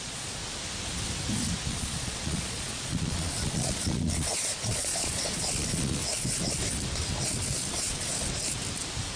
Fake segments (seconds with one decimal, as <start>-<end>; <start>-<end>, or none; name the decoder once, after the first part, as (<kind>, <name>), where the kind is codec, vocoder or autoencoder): 0.0-0.4 (vocoder, Vocos); 1.7-6.0; 7.7-8.1